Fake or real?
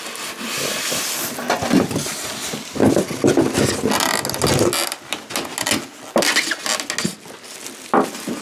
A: real